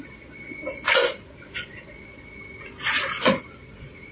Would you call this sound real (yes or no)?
no